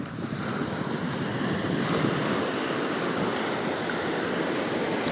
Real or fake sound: fake